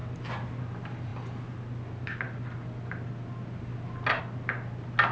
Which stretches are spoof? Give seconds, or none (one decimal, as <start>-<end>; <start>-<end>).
none